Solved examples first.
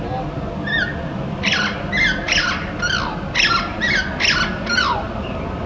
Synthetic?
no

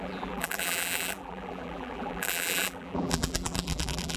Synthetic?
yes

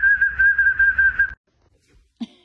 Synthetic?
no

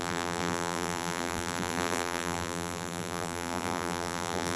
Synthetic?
yes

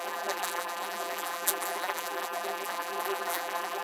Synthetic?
yes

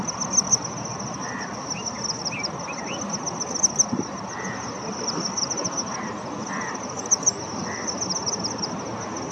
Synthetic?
no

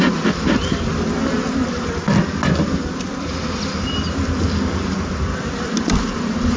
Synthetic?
no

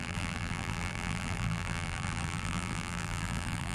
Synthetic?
yes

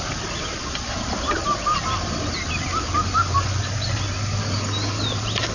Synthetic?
no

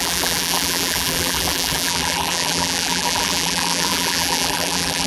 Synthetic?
yes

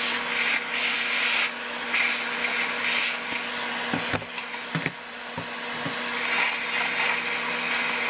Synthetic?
no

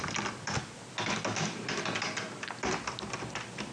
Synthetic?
no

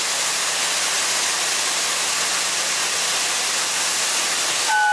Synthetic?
no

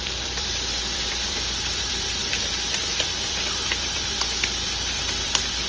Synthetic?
yes